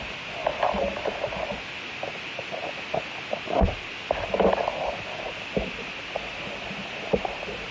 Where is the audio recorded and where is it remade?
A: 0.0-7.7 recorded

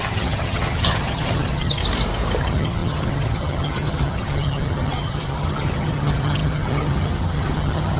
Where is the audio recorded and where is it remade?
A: 0.0-1.8 remade; 1.8-2.4 recorded; 2.4-8.0 remade